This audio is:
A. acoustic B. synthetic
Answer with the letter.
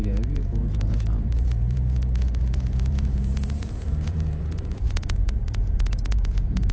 B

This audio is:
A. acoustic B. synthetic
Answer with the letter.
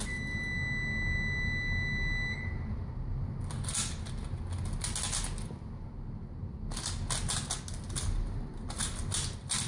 A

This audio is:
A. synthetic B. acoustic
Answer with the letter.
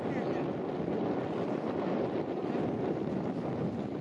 B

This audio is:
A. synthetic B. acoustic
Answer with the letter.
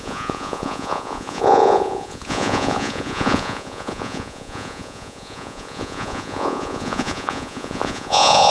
A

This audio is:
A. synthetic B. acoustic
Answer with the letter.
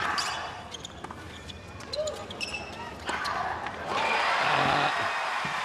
B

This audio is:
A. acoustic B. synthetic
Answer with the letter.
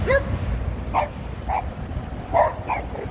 A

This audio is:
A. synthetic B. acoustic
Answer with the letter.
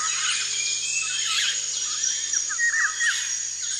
B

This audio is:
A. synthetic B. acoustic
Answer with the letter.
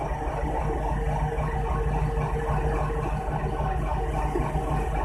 B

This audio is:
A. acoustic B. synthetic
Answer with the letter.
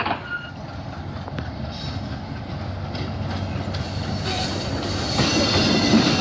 A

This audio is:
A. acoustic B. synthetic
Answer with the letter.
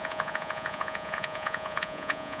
B